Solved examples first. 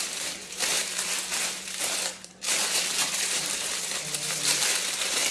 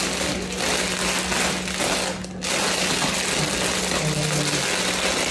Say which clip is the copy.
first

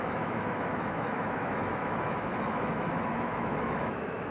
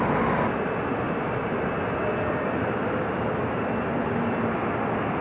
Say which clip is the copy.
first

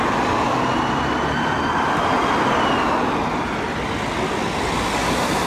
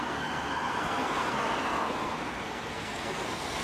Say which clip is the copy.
second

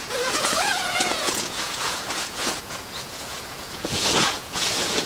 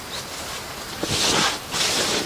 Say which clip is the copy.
first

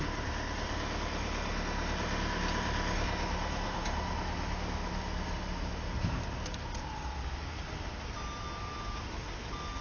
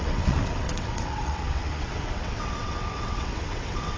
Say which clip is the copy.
second